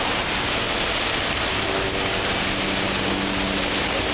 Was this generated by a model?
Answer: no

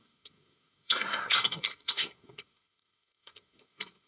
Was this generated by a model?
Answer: yes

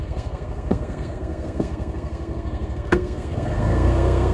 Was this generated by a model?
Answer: yes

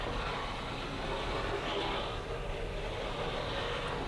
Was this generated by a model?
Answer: no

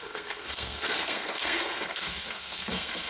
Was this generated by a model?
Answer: yes